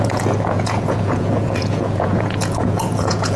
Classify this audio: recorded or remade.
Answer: remade